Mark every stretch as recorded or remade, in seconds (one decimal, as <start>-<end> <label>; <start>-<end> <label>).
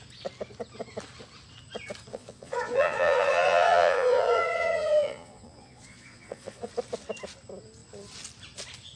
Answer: 0.0-2.1 recorded; 2.1-6.7 remade; 6.7-9.0 recorded